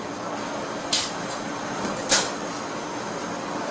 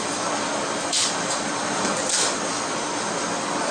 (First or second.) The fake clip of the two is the second